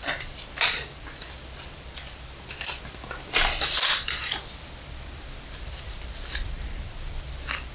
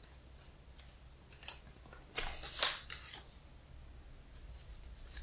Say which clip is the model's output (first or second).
first